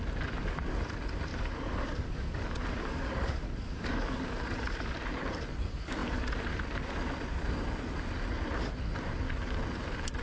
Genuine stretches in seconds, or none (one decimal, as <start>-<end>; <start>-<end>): 0.0-1.3; 4.9-10.2